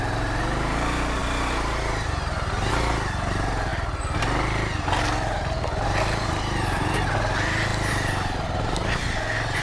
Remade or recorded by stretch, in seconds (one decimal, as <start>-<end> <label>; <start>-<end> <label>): 0.0-9.6 recorded